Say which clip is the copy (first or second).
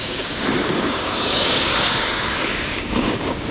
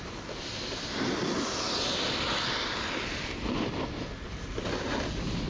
first